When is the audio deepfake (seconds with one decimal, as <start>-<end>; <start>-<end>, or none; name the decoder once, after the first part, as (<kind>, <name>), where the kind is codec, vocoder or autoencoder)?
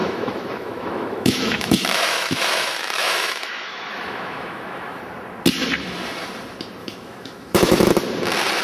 0.0-5.0 (autoencoder, DAC-VAE); 6.8-7.9